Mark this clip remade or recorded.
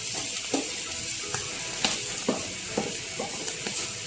recorded